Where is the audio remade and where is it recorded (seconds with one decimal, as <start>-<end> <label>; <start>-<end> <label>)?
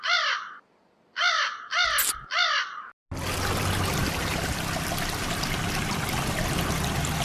0.0-7.2 recorded